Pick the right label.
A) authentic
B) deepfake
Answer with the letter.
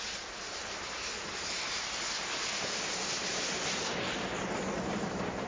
A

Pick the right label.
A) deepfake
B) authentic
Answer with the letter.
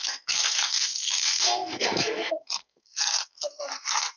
A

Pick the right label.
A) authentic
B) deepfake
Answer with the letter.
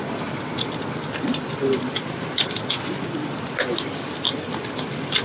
A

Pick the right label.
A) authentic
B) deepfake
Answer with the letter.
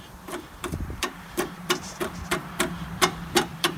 B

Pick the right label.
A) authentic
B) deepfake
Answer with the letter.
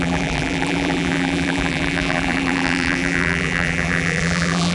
B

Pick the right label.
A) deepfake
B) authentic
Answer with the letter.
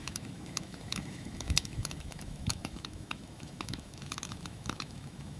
A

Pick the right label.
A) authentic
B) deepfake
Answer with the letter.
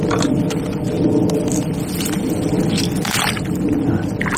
A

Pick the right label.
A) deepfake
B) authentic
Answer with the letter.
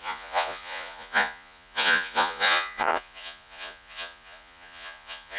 A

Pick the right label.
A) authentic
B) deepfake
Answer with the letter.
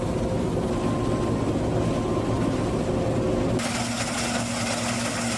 A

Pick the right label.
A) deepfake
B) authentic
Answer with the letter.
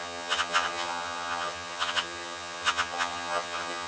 A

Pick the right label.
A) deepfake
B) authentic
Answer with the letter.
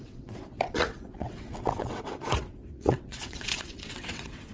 A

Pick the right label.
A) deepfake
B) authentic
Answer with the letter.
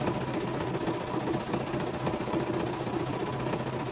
B